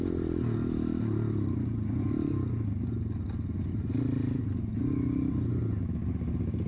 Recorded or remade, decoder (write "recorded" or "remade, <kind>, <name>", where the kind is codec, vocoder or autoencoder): recorded